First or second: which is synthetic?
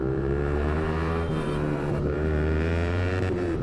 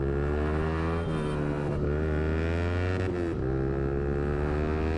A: first